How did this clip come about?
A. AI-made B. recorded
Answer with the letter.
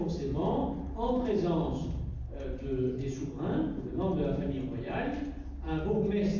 B